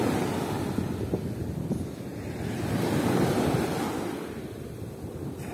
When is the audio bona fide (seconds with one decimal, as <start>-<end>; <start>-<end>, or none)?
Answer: 0.0-5.5